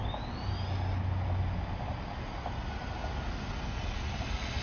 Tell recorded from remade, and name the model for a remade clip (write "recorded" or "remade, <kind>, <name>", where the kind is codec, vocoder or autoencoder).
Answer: recorded